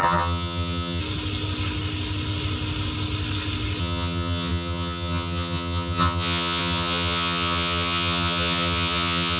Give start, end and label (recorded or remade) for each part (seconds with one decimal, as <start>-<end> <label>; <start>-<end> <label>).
0.0-1.0 remade; 1.0-3.8 recorded; 3.8-9.4 remade